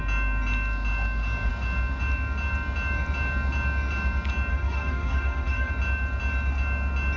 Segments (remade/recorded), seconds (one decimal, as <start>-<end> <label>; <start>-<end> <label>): 0.0-4.5 recorded; 4.5-5.7 remade; 5.7-7.2 recorded